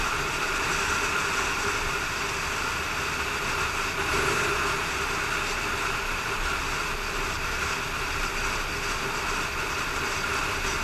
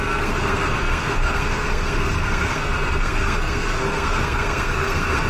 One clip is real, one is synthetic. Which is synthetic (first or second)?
second